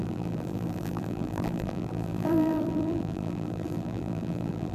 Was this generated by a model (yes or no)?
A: yes